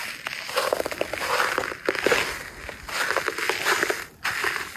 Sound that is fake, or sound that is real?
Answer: real